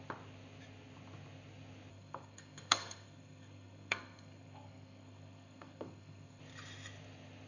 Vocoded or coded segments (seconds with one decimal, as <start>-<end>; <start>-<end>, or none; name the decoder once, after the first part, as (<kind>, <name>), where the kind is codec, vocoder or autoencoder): 1.9-6.4 (codec, SNAC)